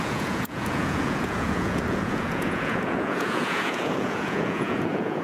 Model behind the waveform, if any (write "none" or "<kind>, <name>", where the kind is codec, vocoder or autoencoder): vocoder, Vocos